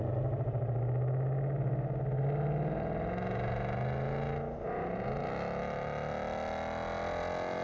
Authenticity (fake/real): real